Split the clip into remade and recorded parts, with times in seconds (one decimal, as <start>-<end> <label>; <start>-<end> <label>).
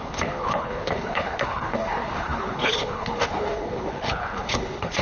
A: 0.0-5.0 remade